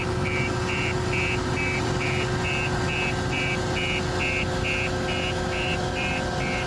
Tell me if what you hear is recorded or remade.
recorded